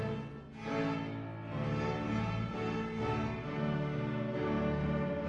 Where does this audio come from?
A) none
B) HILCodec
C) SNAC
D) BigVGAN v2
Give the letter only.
A